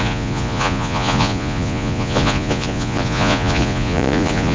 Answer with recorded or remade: remade